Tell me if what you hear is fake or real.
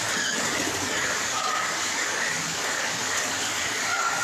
fake